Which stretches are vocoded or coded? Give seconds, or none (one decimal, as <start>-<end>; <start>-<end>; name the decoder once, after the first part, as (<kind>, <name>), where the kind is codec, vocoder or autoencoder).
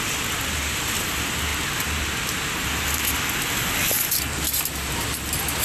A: none